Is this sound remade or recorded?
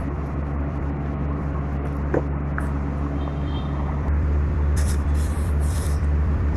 remade